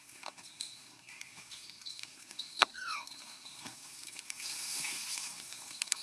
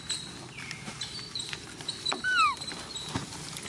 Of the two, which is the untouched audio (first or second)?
second